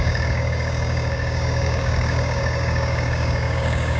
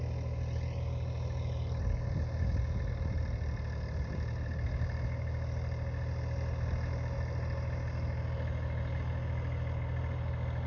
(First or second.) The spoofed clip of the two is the first